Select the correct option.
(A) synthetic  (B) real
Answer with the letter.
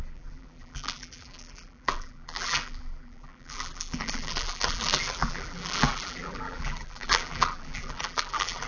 A